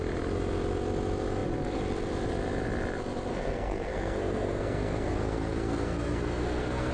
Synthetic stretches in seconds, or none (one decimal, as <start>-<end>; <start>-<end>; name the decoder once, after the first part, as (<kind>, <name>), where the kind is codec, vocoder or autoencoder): 3.3-6.9 (codec, SNAC)